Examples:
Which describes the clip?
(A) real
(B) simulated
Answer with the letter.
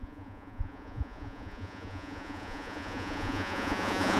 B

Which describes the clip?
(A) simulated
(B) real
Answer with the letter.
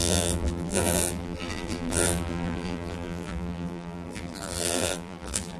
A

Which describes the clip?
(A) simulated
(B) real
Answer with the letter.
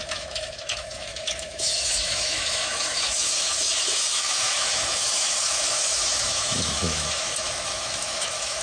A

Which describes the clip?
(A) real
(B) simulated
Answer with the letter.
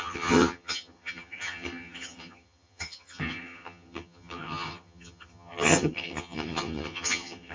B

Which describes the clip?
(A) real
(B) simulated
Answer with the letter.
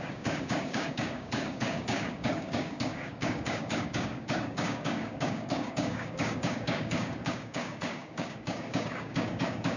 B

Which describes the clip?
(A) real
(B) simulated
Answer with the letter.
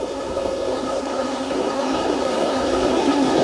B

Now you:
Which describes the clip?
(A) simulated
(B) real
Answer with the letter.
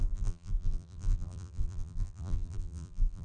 A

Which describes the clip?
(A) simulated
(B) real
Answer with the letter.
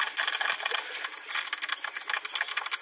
B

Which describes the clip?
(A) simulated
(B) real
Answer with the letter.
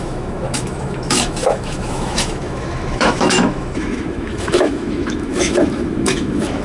A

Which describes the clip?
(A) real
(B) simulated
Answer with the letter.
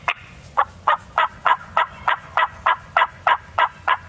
B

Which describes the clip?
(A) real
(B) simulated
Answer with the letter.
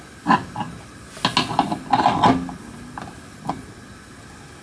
A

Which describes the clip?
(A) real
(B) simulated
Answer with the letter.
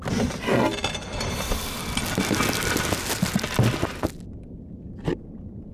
A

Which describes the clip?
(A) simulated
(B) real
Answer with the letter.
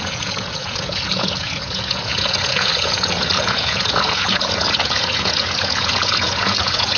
A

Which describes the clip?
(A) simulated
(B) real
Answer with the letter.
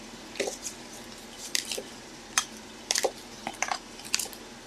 A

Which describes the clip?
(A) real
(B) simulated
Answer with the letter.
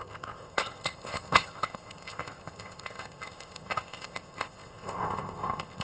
B